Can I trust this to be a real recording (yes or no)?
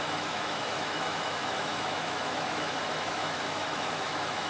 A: no